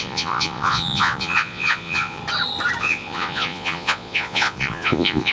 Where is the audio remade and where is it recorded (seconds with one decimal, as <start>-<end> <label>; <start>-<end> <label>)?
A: 0.0-2.2 remade; 2.2-2.8 recorded; 2.8-5.3 remade